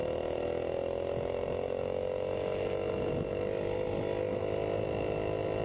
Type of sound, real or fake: real